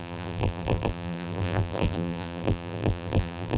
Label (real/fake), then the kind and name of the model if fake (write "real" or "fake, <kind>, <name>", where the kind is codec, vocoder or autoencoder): fake, vocoder, BigVGAN v2